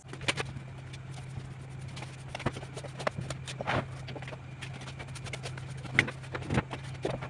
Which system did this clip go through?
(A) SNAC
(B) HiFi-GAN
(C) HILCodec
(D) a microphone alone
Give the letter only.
D